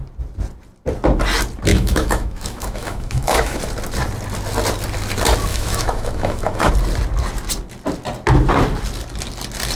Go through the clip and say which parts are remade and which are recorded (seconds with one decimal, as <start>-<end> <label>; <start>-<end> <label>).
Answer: 0.0-1.7 recorded; 1.7-3.6 remade; 3.6-5.5 recorded; 5.5-6.7 remade; 6.7-9.8 recorded